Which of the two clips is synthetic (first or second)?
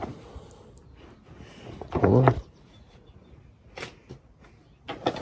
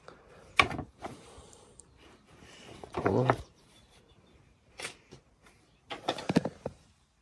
second